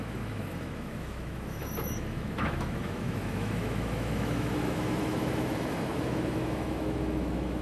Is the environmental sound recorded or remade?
remade